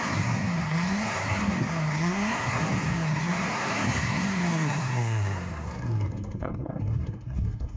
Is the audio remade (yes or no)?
yes